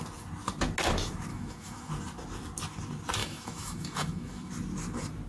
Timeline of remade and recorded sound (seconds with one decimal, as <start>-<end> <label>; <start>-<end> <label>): 0.0-1.3 recorded; 1.3-1.9 remade; 1.9-3.2 recorded; 3.2-4.5 remade; 4.5-5.3 recorded